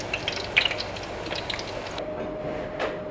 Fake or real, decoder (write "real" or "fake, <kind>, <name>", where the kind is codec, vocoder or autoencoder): real